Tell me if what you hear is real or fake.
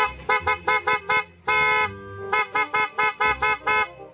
real